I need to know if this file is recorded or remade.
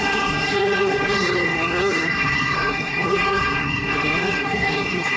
remade